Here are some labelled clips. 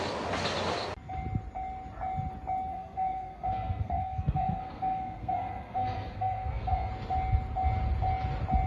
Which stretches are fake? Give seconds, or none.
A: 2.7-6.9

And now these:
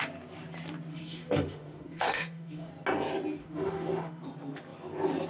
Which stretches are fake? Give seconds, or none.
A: 0.9-2.7; 3.4-4.2